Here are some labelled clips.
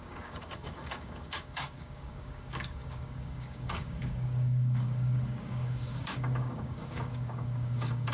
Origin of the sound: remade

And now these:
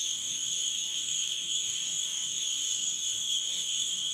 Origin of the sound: remade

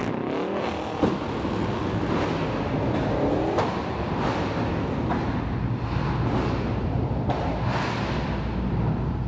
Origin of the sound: recorded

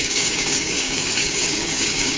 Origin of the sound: remade